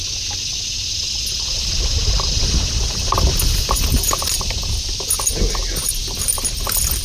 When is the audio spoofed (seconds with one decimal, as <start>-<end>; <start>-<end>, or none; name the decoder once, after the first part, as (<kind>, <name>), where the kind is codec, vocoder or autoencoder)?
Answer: none